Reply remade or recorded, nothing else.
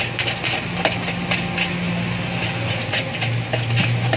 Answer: recorded